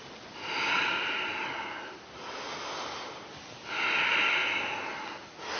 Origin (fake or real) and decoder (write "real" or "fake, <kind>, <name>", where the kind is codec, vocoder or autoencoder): real